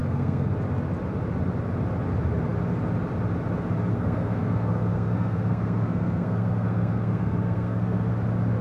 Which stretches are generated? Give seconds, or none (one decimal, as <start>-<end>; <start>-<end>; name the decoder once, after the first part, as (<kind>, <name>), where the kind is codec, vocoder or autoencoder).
0.0-0.5 (codec, SNAC); 3.9-8.1